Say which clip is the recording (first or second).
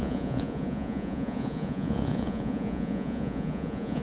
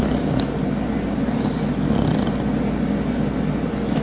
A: second